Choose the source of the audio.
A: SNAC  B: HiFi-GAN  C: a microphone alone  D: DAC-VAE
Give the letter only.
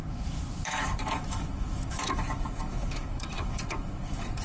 D